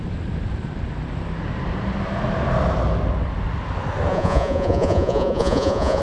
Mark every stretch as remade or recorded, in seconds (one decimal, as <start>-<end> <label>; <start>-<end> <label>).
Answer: 0.0-4.1 recorded; 4.1-6.0 remade